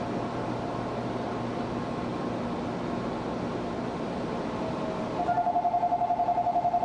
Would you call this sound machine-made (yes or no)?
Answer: no